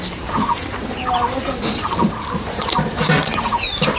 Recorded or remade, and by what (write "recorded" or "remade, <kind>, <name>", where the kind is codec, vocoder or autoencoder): remade, vocoder, BigVGAN v2